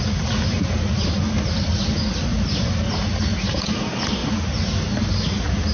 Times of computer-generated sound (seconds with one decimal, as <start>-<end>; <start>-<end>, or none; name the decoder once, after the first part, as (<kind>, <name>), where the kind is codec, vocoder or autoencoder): none